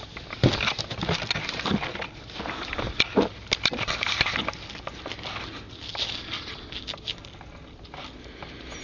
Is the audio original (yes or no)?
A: yes